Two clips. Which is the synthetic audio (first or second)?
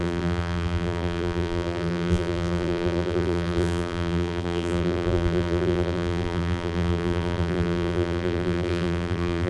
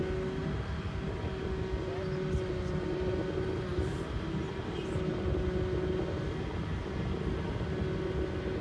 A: first